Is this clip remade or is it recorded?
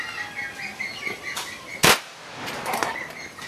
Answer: recorded